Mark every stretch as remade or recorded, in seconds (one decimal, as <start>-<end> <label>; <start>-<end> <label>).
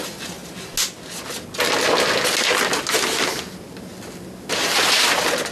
0.0-5.5 recorded